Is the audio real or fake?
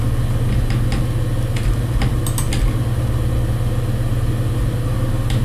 real